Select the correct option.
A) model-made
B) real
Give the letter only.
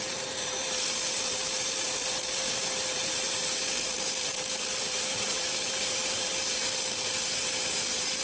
A